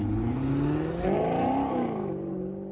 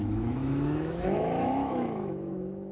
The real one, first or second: first